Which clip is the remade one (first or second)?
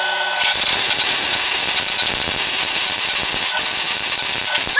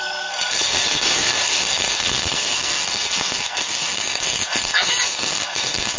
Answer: second